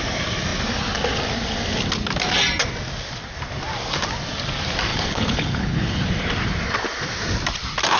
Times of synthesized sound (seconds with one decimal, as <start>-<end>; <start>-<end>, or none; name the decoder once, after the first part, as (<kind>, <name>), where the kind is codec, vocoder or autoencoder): 4.9-6.0 (codec, HILCodec)